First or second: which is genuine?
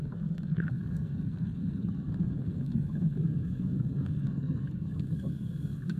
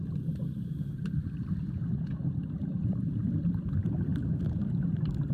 second